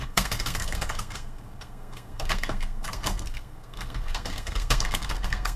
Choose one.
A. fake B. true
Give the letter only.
A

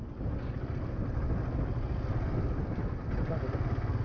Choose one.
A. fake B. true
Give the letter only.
B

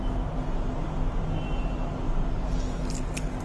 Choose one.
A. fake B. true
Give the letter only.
B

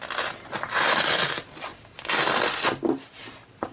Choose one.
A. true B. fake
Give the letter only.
A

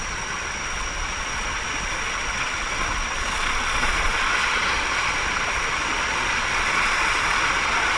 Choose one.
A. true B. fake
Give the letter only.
B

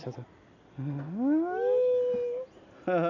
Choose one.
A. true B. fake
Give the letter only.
A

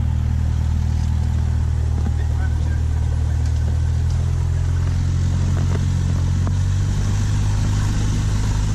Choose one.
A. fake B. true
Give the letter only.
B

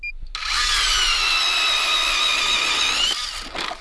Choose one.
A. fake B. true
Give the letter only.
B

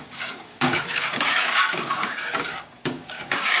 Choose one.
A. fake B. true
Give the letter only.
A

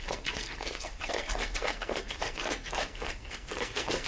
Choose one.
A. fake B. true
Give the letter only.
A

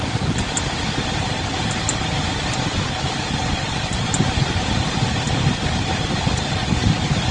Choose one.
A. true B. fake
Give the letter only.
A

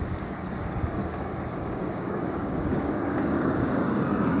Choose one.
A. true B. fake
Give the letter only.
B